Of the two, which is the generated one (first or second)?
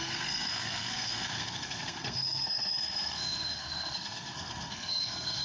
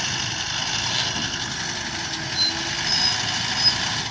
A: first